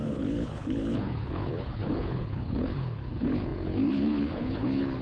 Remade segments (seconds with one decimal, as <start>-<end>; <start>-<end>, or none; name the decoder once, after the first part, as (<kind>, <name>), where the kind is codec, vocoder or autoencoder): 0.0-5.0 (codec, HILCodec)

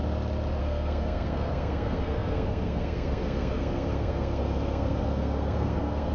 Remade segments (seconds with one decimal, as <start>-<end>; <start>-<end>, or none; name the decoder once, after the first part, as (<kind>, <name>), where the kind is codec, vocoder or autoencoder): 0.6-6.1 (codec, SNAC)

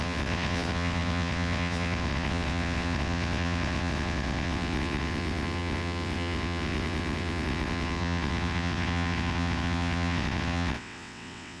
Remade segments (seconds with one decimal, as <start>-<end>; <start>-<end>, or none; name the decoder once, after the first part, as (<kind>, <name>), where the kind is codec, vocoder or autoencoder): 0.0-11.6 (vocoder, WaveNeXt)

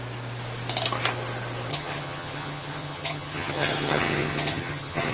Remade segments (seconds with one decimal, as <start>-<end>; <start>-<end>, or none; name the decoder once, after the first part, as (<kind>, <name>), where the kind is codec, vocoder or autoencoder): 1.7-5.1 (vocoder, HiFi-GAN)

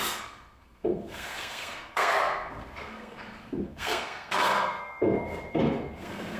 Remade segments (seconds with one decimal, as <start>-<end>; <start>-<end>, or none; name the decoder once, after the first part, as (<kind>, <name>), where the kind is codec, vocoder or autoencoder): 0.0-6.4 (codec, SNAC)